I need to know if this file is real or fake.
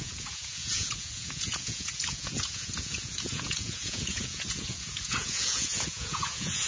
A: fake